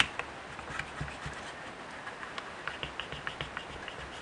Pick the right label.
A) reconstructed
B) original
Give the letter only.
B